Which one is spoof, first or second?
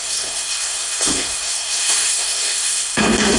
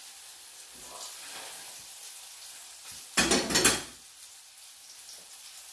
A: first